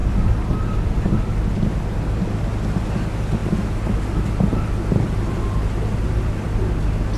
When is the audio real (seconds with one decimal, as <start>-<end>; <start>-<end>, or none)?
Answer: 0.0-7.2